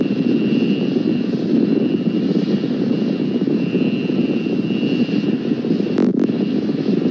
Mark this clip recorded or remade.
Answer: recorded